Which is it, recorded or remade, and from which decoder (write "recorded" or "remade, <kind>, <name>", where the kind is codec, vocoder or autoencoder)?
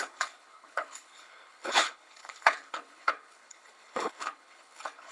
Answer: remade, codec, HILCodec